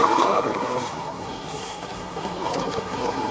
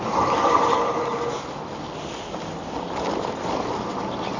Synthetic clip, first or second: first